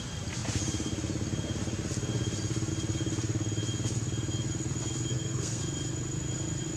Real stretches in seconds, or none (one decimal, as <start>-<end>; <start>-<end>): 0.0-5.1; 5.6-6.8